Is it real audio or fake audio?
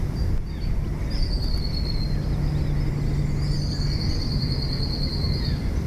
real